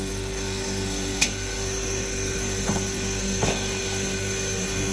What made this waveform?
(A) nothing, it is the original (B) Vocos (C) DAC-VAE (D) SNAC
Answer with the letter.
D